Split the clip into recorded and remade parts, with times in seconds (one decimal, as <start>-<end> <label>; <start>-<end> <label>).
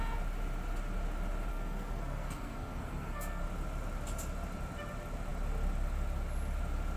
0.0-1.5 recorded; 1.5-3.4 remade; 3.4-7.0 recorded